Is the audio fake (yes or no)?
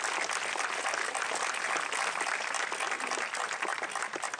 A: no